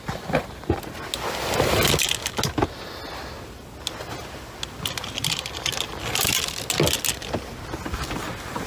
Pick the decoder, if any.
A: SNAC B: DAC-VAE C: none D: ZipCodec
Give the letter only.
C